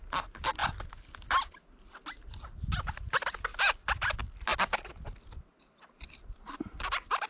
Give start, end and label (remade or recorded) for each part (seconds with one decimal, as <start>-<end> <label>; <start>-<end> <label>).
0.0-7.3 recorded